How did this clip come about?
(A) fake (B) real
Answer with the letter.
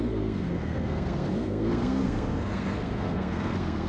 A